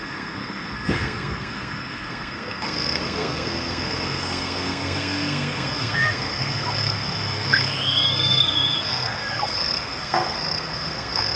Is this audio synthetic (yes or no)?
yes